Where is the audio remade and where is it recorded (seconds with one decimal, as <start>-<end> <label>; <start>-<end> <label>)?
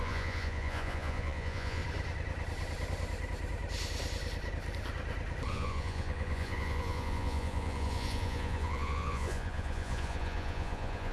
0.0-1.8 remade; 1.8-5.5 recorded; 5.5-11.1 remade